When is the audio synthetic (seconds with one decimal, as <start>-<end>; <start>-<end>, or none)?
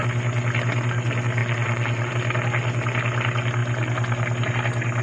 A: 1.4-2.1